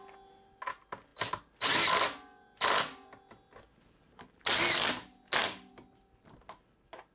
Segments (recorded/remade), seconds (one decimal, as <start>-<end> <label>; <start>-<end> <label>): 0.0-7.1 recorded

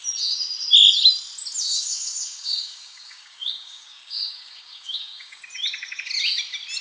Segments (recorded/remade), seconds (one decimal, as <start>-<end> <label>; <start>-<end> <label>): 0.0-1.7 recorded; 1.7-5.4 remade; 5.4-6.8 recorded

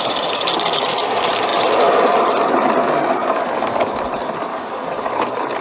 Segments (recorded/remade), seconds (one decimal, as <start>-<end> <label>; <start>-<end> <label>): 0.0-3.2 recorded; 3.2-3.9 remade; 3.9-4.5 recorded; 4.5-5.6 remade

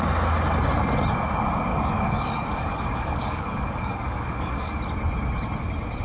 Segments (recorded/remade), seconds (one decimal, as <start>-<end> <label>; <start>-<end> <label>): 0.0-1.7 recorded; 1.7-4.7 remade; 4.7-6.0 recorded

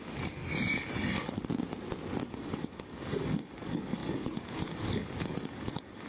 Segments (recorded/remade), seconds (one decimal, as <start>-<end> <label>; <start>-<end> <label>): 0.0-0.4 remade; 0.4-2.3 recorded; 2.3-6.1 remade